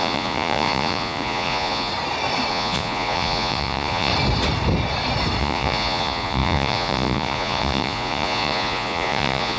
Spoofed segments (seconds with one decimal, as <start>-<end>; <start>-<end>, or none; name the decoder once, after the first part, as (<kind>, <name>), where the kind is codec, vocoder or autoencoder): 0.0-1.9 (vocoder, Vocos); 2.5-4.1; 5.4-9.6